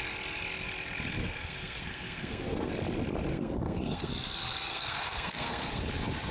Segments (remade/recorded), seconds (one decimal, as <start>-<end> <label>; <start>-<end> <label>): 0.0-1.2 recorded; 1.2-2.7 remade; 2.7-3.3 recorded; 3.3-4.1 remade; 4.1-4.7 recorded; 4.7-5.8 remade; 5.8-6.3 recorded